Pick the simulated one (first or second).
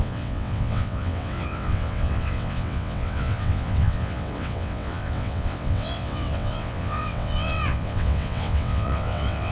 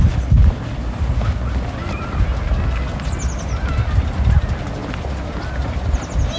first